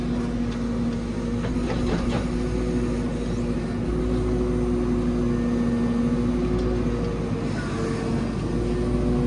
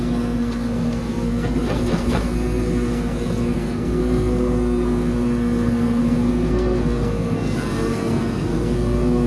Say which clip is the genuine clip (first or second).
first